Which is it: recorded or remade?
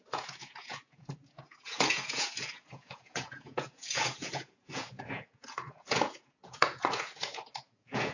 remade